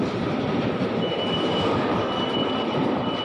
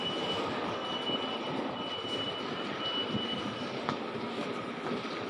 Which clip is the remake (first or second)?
first